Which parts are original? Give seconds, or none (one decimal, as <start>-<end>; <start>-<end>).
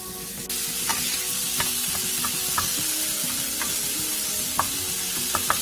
0.0-5.6